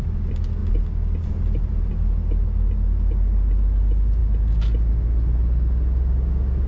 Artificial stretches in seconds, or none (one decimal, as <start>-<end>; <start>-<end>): none